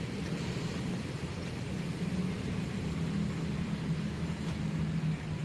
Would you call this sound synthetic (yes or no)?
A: no